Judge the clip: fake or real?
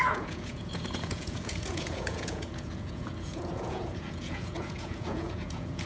fake